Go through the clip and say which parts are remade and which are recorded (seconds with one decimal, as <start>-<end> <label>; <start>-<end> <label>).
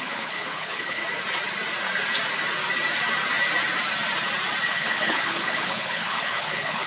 0.0-1.0 remade; 1.0-4.7 recorded; 4.7-6.9 remade